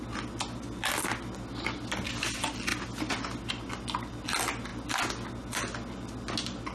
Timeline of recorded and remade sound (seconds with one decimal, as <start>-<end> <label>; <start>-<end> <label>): 0.0-6.7 recorded